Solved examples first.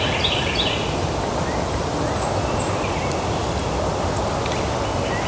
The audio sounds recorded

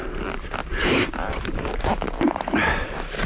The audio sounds remade